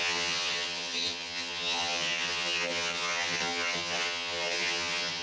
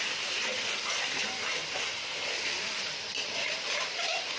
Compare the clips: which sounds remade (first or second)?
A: first